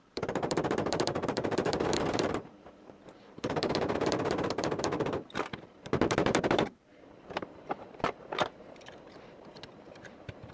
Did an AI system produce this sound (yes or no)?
yes